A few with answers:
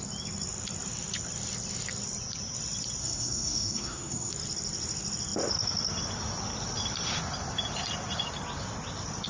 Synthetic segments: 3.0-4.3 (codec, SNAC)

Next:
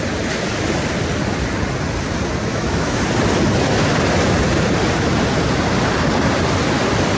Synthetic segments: 2.5-3.0 (autoencoder, DAC-VAE)

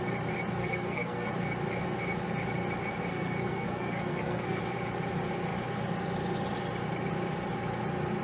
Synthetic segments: 0.6-1.3 (codec, SNAC); 3.1-4.6

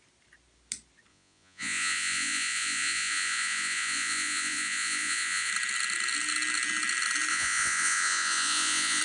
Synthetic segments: 1.1-5.5 (vocoder, Vocos); 7.3-9.0

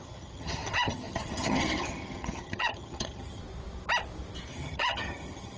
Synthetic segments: 0.0-3.4 (vocoder, HiFi-GAN); 4.5-5.6